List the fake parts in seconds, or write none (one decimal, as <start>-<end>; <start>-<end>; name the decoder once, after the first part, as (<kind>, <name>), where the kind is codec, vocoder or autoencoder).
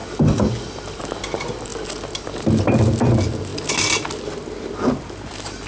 none